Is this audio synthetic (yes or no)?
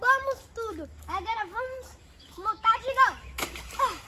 yes